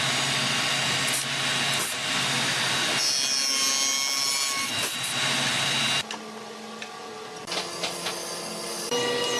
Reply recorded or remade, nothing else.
recorded